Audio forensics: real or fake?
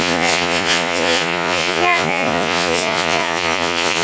fake